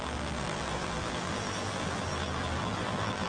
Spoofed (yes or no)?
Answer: yes